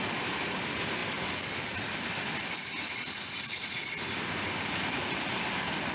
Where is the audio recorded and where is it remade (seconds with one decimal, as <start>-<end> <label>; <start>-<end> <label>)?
0.0-5.9 recorded